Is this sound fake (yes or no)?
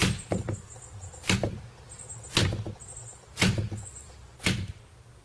no